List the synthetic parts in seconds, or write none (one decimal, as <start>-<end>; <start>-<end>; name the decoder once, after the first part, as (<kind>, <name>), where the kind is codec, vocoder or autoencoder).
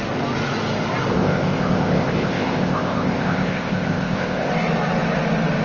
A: 1.1-4.5 (codec, ZipCodec)